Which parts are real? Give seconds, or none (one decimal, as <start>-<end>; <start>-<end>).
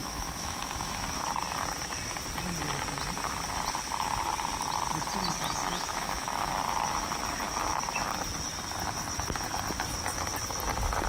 1.2-5.6; 6.5-11.1